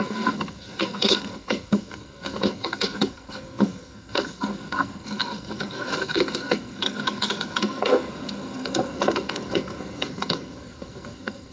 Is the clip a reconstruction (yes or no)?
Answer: yes